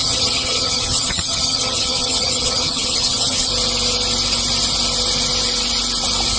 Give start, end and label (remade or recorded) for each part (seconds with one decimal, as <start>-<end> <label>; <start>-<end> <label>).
0.0-3.5 remade; 3.5-6.4 recorded